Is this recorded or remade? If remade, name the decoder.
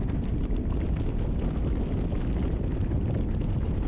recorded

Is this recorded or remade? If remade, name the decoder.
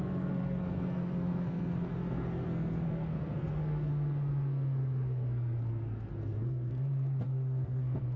remade, codec, SNAC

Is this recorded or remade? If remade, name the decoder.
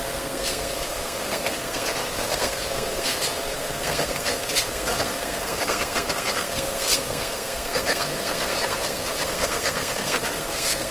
remade, codec, SNAC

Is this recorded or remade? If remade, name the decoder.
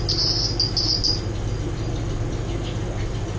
recorded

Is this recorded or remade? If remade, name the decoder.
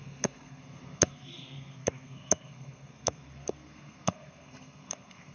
remade, codec, SNAC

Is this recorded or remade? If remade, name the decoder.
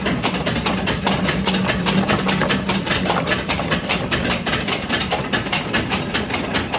remade, vocoder, BigVGAN v2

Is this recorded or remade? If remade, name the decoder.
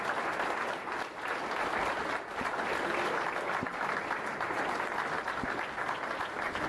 recorded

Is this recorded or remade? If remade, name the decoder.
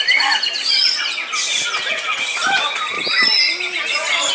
recorded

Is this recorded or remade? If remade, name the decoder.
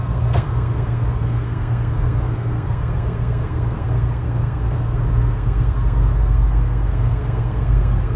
remade, codec, SNAC